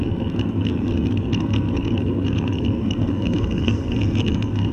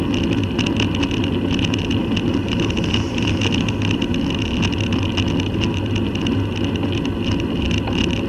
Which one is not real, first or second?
first